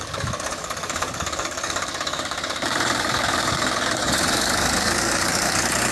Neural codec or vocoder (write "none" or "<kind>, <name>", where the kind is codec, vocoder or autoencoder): codec, DAC